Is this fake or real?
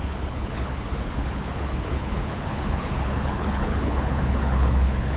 fake